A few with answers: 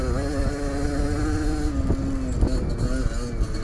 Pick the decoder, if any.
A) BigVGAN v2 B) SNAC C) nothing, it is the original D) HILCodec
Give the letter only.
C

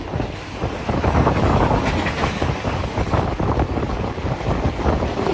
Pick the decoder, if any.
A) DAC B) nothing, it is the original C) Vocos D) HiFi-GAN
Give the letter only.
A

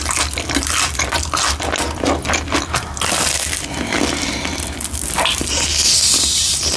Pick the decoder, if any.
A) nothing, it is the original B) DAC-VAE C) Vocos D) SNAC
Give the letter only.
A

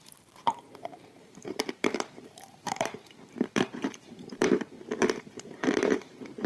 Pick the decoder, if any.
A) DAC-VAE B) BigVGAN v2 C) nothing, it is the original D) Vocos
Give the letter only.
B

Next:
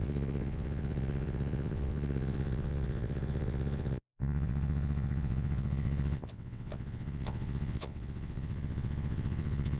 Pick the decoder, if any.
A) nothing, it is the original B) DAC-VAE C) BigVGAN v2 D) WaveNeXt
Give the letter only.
D